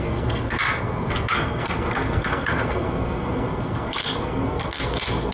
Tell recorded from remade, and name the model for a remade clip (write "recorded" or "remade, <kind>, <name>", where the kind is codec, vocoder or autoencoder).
remade, codec, SNAC